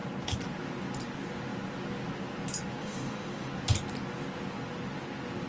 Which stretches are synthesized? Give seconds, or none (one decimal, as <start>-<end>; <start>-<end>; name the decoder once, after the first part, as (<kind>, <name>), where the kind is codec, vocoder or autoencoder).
2.8-3.5 (autoencoder, DAC-VAE)